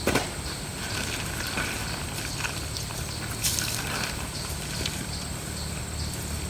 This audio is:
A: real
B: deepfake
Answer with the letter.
A